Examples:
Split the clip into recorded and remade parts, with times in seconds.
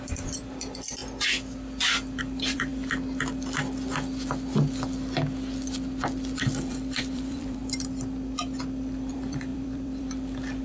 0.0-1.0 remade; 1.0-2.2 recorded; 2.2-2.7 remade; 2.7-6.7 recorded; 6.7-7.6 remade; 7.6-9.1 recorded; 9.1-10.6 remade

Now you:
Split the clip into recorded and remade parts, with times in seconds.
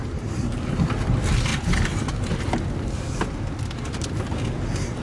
0.0-5.0 recorded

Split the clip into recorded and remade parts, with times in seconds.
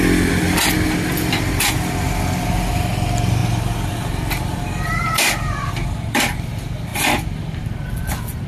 0.0-8.5 remade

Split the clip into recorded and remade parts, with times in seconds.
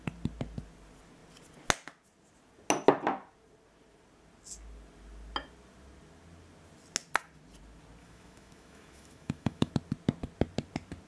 0.0-8.0 recorded; 8.0-9.7 remade; 9.7-11.1 recorded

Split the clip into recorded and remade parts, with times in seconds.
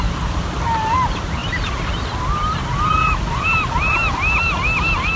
0.0-5.2 recorded